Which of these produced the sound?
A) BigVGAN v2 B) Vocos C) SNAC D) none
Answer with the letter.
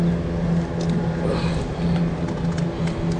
D